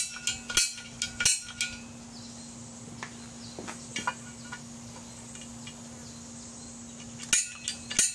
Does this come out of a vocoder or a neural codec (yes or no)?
no